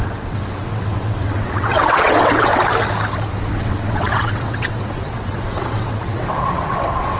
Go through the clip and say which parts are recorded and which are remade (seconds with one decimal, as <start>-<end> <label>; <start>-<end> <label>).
0.0-2.5 remade; 2.5-3.6 recorded; 3.6-7.2 remade